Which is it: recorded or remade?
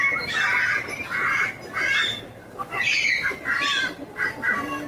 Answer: recorded